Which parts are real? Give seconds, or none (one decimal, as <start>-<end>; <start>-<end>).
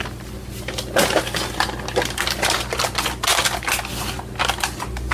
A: 0.0-5.1